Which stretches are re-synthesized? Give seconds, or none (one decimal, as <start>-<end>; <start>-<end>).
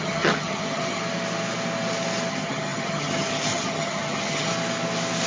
0.0-1.0; 2.3-4.5